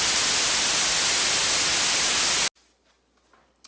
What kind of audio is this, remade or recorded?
recorded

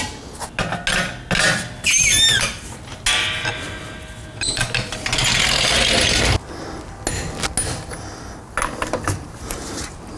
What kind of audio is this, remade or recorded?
recorded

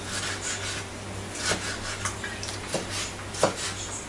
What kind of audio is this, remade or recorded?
recorded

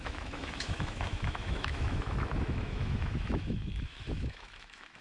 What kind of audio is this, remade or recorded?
remade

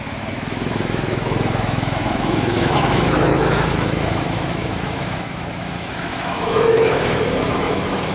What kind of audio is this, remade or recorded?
remade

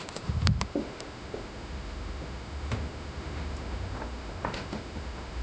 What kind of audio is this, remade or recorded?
remade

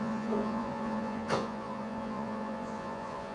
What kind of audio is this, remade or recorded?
remade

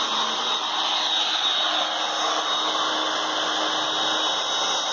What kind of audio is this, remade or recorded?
recorded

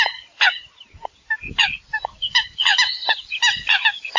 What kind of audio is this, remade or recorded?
recorded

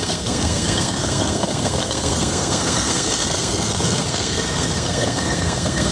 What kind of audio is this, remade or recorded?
remade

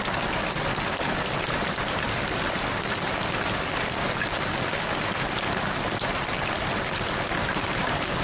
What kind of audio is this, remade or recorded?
recorded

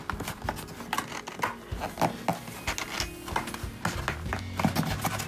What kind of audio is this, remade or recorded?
recorded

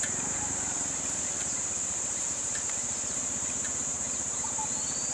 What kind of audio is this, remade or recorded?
remade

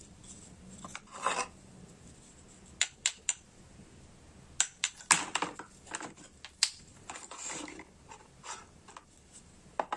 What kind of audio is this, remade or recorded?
recorded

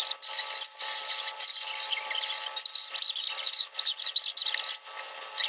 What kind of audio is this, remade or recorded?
recorded